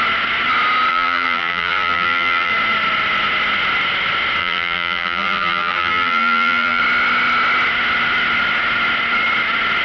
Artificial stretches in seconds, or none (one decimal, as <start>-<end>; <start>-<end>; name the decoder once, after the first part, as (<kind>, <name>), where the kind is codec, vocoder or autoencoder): 0.9-2.5 (vocoder, BigVGAN v2); 4.4-6.8